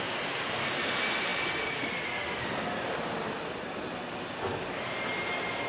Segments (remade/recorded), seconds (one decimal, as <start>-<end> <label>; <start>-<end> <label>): 0.0-5.7 recorded